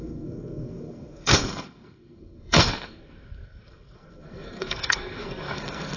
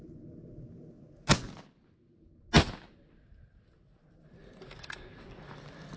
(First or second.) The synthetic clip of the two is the first